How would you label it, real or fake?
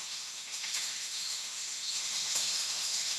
fake